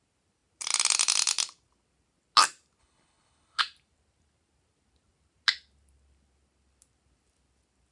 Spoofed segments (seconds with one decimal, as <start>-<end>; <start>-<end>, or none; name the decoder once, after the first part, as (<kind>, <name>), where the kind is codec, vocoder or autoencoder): 2.8-3.6 (codec, HILCodec)